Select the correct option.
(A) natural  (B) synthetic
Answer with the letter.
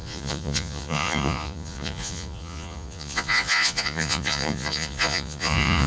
B